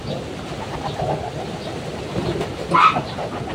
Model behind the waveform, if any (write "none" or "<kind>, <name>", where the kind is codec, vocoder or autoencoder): none